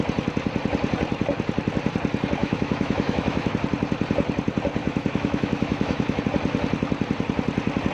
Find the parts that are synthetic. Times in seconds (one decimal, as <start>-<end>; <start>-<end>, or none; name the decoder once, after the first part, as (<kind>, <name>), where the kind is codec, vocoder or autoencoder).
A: 2.4-3.5 (autoencoder, DAC-VAE); 4.8-6.2